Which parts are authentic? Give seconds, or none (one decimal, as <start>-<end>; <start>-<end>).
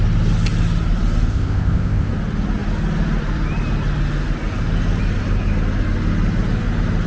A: 0.0-1.3; 2.1-7.1